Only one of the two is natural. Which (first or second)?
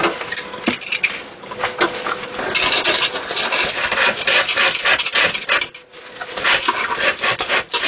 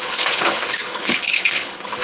first